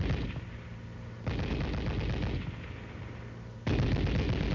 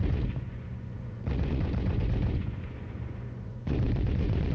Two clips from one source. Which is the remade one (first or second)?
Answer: second